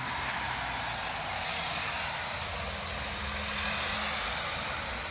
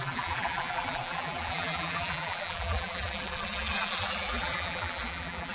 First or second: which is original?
first